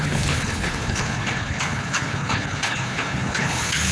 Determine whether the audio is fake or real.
fake